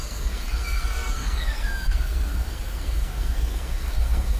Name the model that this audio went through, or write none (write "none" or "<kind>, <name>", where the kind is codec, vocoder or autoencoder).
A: codec, SNAC